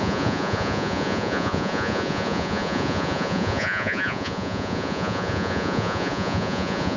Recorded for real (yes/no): no